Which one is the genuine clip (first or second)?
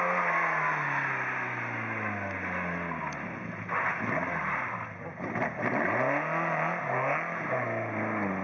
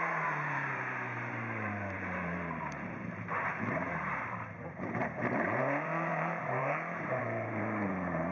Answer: first